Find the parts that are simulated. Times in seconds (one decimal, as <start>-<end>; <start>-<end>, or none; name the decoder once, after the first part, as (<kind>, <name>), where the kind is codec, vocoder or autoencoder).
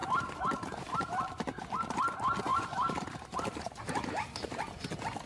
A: 0.0-1.1 (vocoder, BigVGAN v2); 2.5-4.0